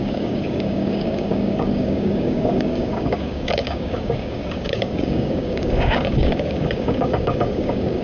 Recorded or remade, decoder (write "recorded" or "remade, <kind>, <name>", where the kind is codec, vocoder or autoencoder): remade, codec, DAC